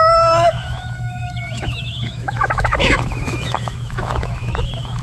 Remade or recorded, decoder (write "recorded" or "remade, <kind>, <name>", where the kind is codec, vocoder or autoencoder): remade, autoencoder, DAC-VAE